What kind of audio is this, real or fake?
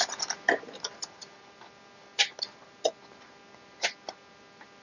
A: real